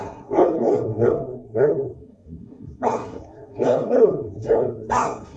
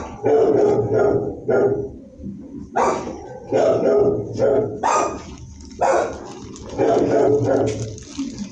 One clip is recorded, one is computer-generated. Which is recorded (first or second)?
second